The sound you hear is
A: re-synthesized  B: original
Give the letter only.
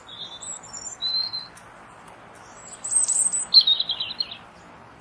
A